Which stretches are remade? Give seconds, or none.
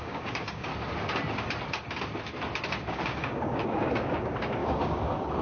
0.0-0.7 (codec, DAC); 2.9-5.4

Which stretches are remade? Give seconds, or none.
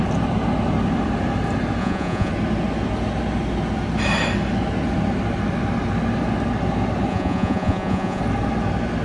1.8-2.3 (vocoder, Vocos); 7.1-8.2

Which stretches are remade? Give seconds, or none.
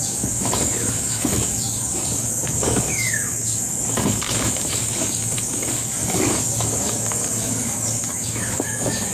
0.0-9.1 (codec, DAC)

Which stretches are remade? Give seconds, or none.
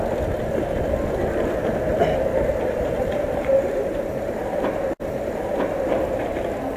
2.3-5.5 (vocoder, BigVGAN v2)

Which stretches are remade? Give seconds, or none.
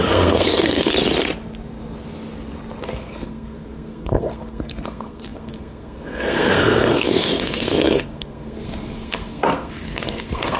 0.0-0.9 (codec, SNAC); 2.8-10.6